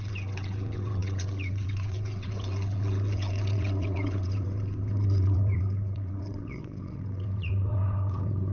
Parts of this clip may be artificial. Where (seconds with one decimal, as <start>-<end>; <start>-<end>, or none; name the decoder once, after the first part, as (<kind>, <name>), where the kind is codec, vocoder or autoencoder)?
0.0-8.5 (vocoder, WaveNeXt)